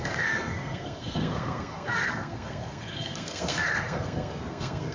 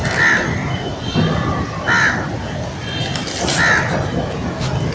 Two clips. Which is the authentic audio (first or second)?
second